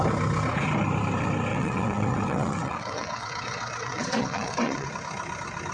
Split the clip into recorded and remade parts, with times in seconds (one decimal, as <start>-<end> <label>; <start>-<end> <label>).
0.0-1.5 recorded; 1.5-4.9 remade; 4.9-5.7 recorded

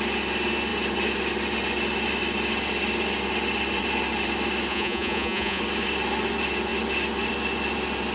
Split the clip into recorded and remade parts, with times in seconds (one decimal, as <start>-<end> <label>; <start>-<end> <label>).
0.0-4.7 recorded; 4.7-5.6 remade; 5.6-8.1 recorded

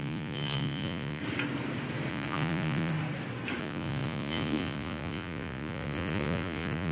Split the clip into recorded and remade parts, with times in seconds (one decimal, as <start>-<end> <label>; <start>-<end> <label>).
0.0-1.2 remade; 1.2-2.1 recorded; 2.1-2.9 remade; 2.9-3.6 recorded; 3.6-6.9 remade

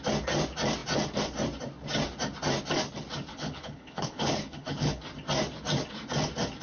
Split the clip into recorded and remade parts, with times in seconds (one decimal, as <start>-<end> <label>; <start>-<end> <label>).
0.0-3.3 recorded; 3.3-5.0 remade; 5.0-6.6 recorded

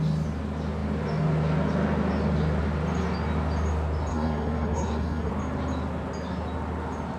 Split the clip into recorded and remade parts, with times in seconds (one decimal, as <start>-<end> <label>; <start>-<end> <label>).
0.0-4.1 recorded; 4.1-5.3 remade; 5.3-7.2 recorded

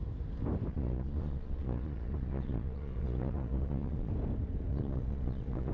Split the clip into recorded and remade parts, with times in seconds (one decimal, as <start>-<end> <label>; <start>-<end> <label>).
0.0-0.7 recorded; 0.7-4.1 remade; 4.1-4.7 recorded; 4.7-5.7 remade